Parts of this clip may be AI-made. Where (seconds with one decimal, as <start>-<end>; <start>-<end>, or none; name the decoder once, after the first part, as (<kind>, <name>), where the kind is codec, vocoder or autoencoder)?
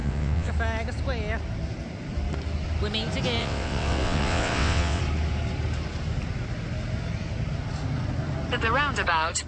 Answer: 0.0-0.5 (vocoder, WaveNeXt); 3.4-5.0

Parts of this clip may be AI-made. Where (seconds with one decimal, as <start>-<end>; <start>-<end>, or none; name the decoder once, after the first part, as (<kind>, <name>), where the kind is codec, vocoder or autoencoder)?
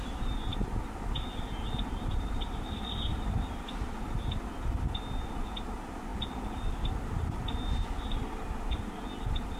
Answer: none